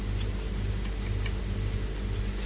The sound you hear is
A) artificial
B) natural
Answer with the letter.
B